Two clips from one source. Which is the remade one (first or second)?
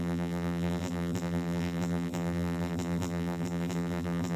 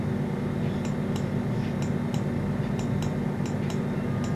first